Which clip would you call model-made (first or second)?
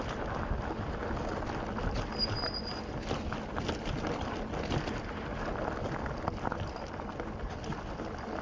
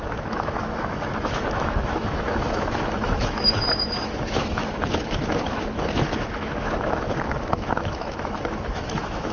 second